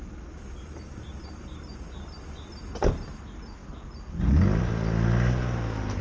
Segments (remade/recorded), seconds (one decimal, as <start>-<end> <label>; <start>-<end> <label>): 0.0-6.0 recorded